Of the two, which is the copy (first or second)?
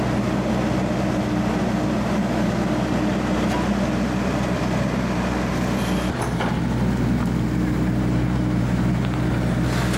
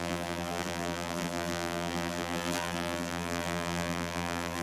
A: second